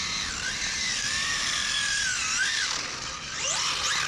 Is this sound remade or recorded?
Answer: recorded